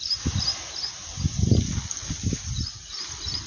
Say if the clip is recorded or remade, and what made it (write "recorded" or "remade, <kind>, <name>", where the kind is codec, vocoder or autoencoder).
recorded